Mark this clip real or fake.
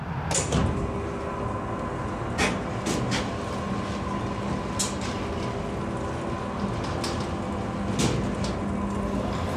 real